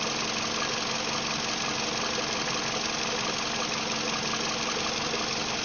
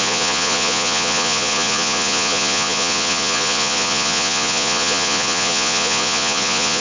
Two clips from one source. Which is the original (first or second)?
first